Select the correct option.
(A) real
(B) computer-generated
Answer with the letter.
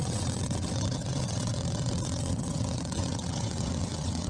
B